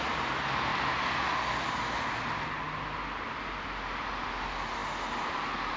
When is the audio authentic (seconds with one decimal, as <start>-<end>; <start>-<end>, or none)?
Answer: 0.0-5.8